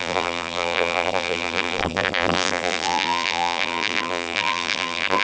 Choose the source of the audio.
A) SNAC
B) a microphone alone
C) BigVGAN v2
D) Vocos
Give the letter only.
C